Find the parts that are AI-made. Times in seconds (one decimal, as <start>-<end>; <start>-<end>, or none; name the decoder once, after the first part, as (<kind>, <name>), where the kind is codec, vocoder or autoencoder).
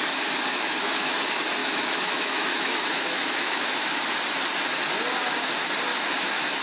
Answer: 0.5-1.2 (autoencoder, DAC-VAE); 1.6-4.0; 5.9-6.6